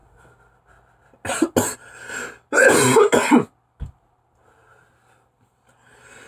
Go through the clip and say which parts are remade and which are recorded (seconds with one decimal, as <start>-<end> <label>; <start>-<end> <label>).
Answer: 0.0-6.3 recorded